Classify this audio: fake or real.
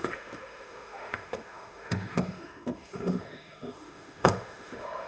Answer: fake